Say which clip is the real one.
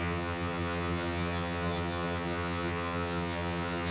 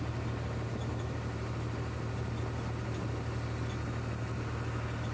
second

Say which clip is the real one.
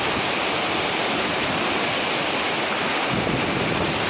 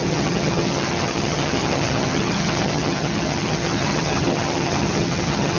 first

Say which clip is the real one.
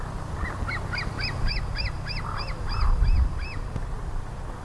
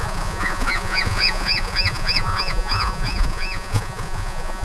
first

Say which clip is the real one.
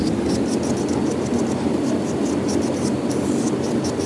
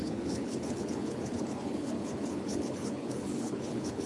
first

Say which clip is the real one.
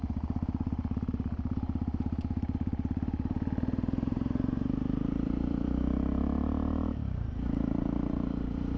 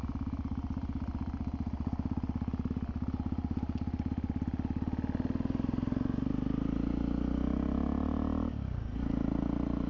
second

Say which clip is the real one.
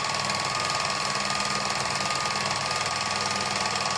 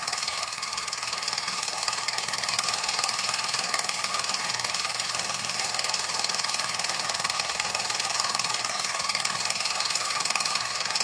first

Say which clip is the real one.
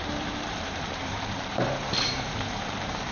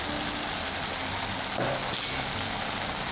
second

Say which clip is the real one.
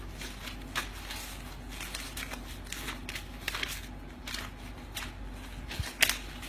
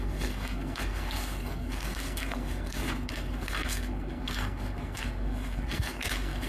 first